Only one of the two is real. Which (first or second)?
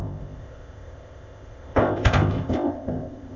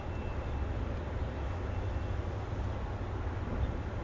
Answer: second